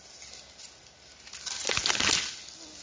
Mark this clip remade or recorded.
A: recorded